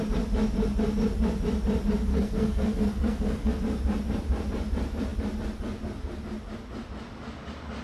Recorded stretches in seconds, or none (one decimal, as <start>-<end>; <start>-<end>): 0.0-2.1; 3.5-7.8